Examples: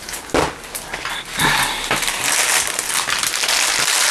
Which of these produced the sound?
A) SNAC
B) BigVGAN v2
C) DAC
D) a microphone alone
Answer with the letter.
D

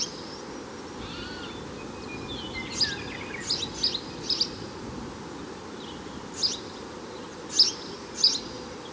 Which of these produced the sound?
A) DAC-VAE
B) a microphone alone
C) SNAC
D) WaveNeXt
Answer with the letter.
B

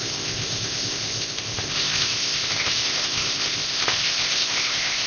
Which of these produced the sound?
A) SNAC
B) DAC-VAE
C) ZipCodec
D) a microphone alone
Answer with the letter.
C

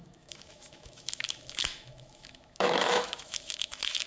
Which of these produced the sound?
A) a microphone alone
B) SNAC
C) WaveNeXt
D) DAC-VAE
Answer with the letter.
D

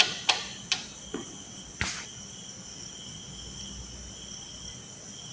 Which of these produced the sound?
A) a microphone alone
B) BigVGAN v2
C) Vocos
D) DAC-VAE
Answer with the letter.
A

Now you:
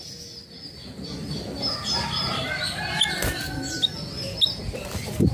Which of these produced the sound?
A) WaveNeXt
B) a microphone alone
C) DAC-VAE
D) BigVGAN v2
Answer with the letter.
B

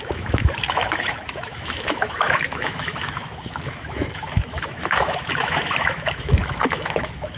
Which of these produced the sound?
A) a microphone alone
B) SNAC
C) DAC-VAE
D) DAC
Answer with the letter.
C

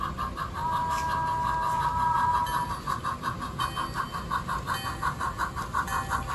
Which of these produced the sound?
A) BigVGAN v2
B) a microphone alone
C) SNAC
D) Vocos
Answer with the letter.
B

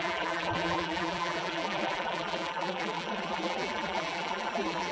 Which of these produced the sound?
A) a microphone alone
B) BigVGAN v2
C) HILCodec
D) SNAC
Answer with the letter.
B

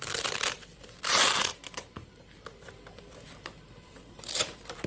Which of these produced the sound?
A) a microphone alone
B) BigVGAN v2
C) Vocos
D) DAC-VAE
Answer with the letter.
B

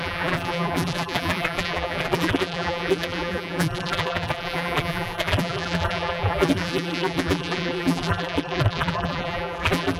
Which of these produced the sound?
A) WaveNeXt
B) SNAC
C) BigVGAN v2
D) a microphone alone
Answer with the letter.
C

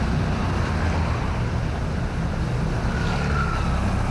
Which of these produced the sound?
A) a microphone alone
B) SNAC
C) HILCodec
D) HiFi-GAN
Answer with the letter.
A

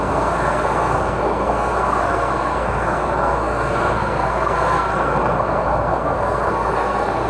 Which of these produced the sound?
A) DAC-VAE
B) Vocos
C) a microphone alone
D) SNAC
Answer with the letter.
D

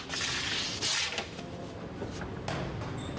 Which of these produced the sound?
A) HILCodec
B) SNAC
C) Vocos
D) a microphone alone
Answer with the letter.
D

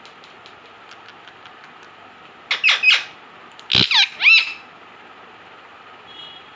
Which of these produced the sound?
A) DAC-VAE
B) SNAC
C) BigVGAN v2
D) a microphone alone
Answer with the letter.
D